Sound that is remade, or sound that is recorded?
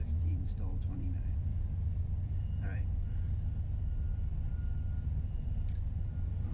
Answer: remade